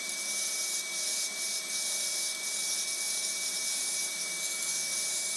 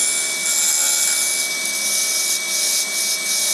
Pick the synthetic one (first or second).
first